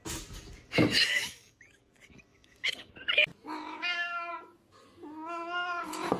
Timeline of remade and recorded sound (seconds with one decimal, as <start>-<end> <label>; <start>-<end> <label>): 0.0-1.1 recorded; 1.1-1.9 remade; 1.9-2.3 recorded; 2.3-2.9 remade; 2.9-6.2 recorded